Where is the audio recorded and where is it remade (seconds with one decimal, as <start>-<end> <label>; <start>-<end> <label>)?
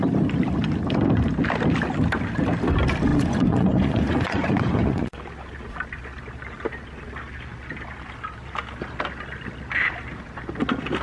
0.0-3.1 recorded; 3.1-5.2 remade; 5.2-11.0 recorded